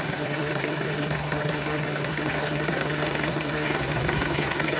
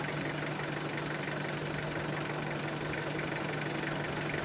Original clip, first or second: second